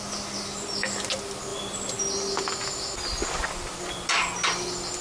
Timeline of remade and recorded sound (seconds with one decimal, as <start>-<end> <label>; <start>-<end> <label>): 0.0-5.0 recorded